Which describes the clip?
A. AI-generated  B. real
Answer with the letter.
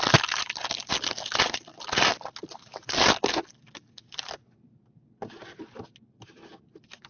B